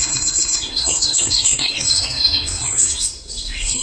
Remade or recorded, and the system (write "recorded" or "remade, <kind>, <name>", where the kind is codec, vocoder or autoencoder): remade, codec, SNAC